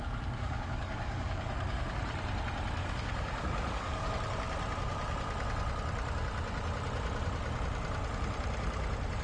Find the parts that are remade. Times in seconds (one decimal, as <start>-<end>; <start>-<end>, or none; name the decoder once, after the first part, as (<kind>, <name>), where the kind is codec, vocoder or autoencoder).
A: 0.0-2.0 (codec, DAC); 2.8-4.1